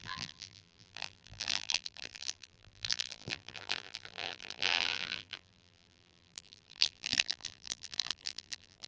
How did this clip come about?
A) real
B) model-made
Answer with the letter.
B